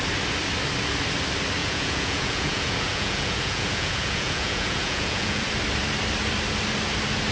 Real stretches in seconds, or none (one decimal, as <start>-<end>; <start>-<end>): 0.0-1.6; 5.5-7.3